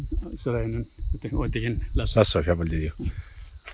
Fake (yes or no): no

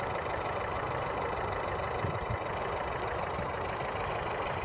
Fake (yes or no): yes